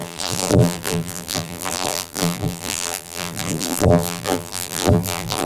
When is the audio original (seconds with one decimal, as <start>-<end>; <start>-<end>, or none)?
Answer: none